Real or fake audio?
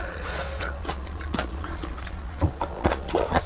fake